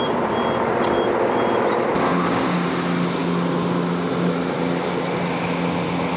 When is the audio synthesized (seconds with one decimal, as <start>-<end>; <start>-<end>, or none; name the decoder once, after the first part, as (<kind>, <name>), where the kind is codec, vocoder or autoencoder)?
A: 2.1-2.7 (codec, DAC)